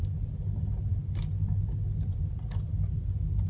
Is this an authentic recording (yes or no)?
yes